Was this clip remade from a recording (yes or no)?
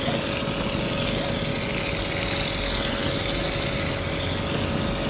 no